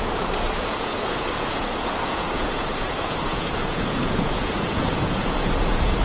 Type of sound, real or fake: fake